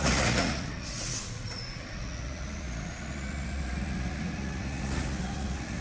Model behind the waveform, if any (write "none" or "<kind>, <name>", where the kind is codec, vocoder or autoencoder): vocoder, Vocos